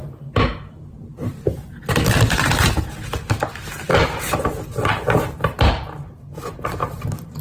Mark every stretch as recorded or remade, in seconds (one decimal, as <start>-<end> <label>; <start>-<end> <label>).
0.0-1.2 recorded; 1.2-2.8 remade; 2.8-7.4 recorded